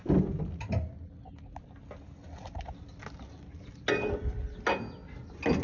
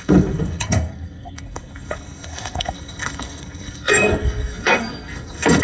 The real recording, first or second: first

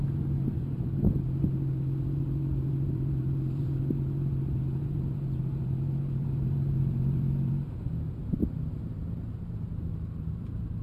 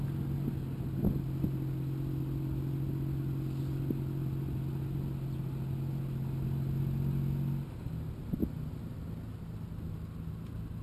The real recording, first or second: second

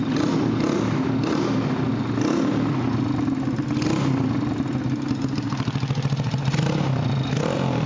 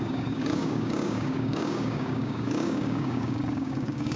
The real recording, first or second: first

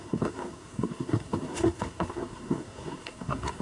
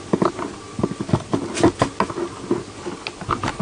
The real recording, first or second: second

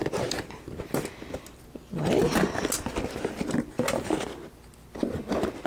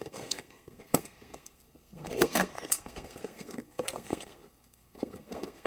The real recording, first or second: first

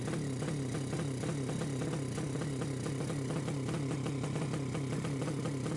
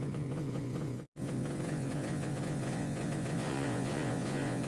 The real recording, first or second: first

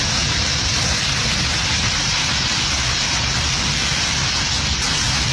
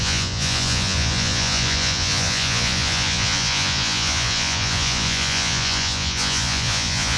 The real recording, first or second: first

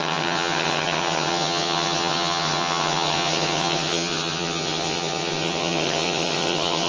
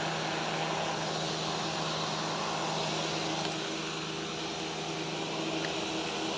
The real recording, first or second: second